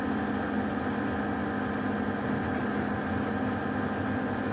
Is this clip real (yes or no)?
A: yes